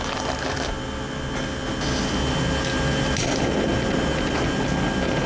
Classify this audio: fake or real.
real